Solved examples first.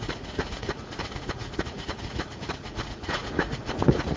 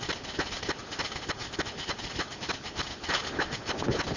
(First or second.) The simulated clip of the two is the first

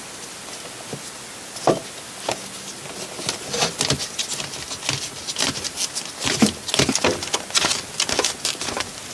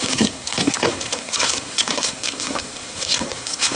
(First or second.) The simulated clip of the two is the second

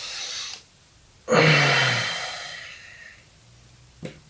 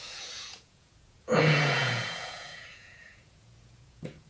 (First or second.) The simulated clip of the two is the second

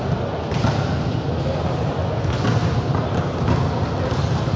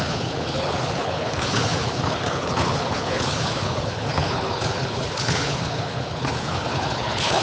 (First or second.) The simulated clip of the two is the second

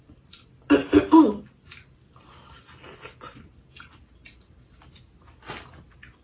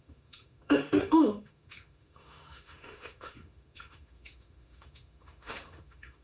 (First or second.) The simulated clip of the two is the second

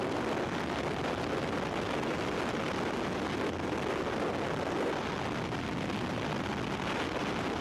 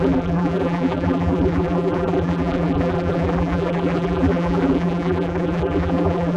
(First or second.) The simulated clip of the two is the second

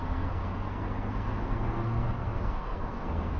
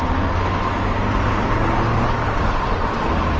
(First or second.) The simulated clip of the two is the first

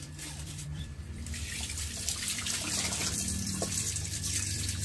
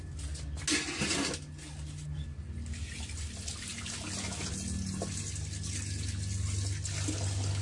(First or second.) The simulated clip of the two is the first